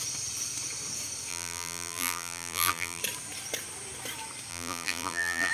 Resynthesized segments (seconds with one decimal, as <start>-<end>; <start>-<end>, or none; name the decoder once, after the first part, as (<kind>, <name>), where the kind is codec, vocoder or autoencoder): 1.3-3.0 (vocoder, BigVGAN v2); 4.5-5.5